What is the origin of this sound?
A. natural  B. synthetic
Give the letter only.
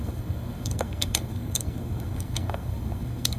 B